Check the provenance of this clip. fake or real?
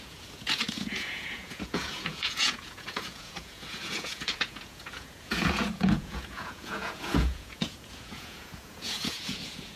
fake